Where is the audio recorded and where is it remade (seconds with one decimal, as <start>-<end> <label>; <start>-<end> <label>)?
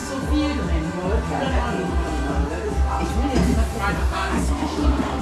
0.0-4.0 recorded; 4.0-5.2 remade